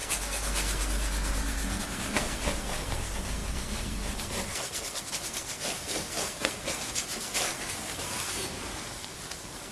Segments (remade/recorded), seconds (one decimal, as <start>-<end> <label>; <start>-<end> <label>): 0.0-9.7 remade